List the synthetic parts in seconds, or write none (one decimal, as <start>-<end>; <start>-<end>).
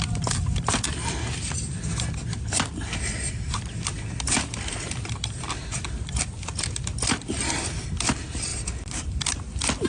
0.0-9.9